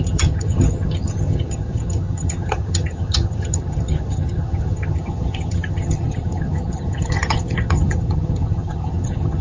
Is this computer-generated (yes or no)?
yes